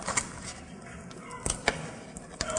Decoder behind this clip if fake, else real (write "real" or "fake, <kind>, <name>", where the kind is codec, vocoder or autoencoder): real